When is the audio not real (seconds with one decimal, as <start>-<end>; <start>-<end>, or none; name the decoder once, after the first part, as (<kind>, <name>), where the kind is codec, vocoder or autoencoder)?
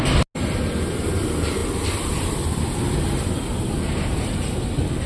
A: none